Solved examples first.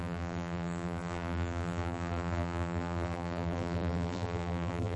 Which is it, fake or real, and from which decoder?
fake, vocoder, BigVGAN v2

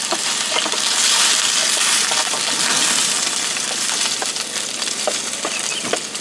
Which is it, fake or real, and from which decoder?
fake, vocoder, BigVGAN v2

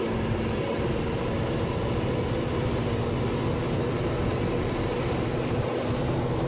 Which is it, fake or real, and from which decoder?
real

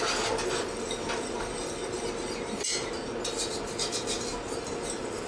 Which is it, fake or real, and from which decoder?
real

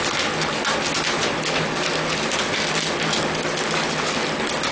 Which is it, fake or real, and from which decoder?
real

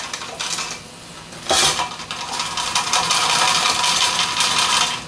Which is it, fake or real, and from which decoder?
real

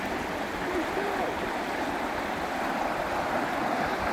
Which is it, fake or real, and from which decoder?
real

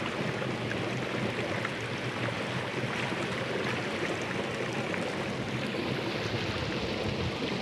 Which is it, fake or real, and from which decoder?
real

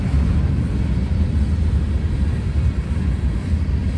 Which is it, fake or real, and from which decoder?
real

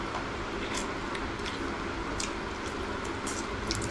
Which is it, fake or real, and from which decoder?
real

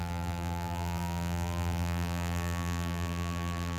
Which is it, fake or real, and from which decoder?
fake, vocoder, BigVGAN v2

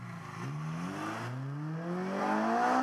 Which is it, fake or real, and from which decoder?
real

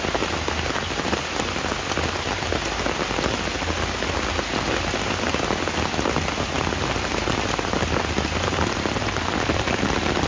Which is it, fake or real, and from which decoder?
real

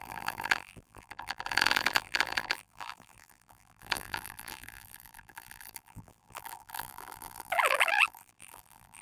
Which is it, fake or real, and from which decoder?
fake, vocoder, BigVGAN v2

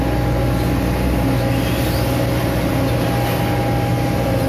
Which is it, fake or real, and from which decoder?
real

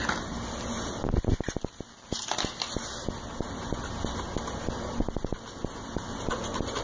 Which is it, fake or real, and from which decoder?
real